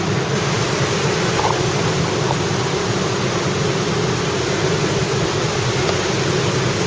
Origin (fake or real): real